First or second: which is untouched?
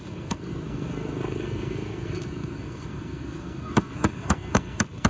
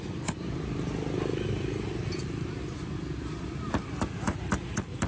second